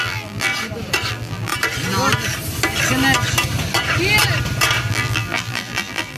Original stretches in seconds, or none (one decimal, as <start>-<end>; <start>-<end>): 0.5-1.1; 1.5-4.9